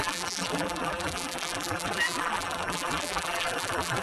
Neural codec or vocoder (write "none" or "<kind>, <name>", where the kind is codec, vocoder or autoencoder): vocoder, BigVGAN v2